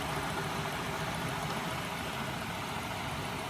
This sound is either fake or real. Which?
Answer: real